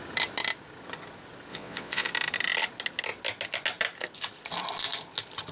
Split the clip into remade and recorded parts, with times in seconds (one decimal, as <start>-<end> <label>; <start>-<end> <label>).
0.0-1.5 recorded; 1.5-2.1 remade; 2.1-5.5 recorded